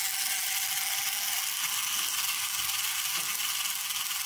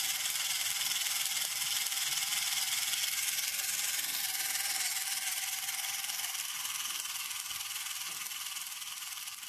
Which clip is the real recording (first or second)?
first